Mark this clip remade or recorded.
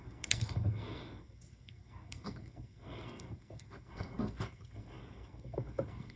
remade